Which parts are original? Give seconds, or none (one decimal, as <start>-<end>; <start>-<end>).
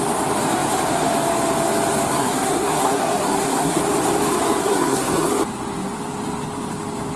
0.0-2.2; 3.8-4.6; 5.3-7.2